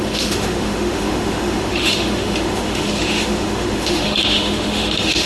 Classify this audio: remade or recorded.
remade